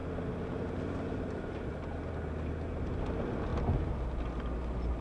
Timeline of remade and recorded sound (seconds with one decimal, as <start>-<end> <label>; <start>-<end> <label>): 0.0-5.0 recorded